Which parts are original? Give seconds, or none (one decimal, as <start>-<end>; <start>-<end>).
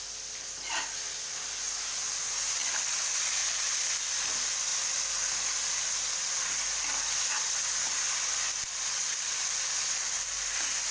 0.0-10.9